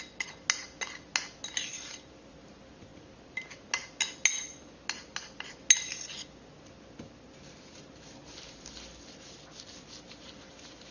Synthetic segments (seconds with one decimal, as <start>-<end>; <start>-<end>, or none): none

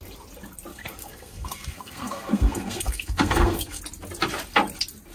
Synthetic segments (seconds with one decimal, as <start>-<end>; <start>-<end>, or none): 0.7-3.8

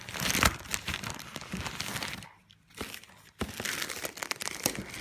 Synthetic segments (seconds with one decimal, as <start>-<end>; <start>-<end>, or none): none

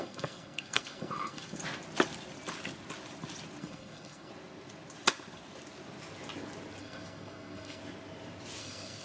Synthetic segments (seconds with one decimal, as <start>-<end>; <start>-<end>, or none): 0.0-1.6; 3.6-4.3; 6.8-7.8; 8.6-9.0

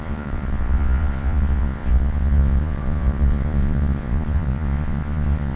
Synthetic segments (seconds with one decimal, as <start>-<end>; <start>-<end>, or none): 0.0-5.6